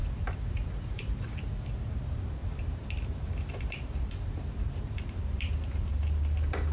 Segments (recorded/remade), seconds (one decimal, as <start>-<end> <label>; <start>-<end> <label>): 0.0-1.4 remade; 1.4-2.4 recorded; 2.4-5.9 remade; 5.9-6.7 recorded

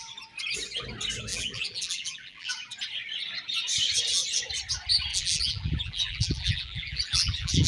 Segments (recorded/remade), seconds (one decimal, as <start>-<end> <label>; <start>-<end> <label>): 0.0-1.3 recorded; 1.3-2.5 remade; 2.5-5.1 recorded; 5.1-7.7 remade

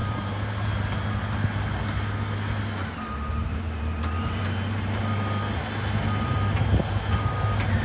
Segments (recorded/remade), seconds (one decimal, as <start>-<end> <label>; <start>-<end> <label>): 0.0-0.8 remade; 0.8-2.8 recorded; 2.8-5.0 remade; 5.0-7.8 recorded

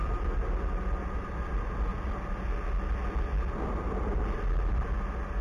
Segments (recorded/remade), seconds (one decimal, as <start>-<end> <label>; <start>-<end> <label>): 0.0-0.4 remade; 0.4-1.2 recorded; 1.2-1.9 remade; 1.9-5.4 recorded